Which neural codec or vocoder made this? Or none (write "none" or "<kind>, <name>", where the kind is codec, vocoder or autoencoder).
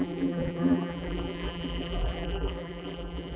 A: vocoder, BigVGAN v2